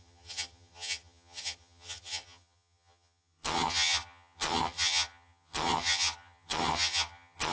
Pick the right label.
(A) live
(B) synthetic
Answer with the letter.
B